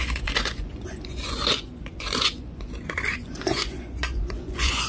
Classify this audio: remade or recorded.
remade